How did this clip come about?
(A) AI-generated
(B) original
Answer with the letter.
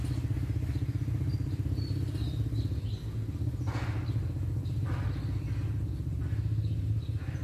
B